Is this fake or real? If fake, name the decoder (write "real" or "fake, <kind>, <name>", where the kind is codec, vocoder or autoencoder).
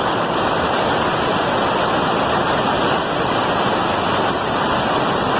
real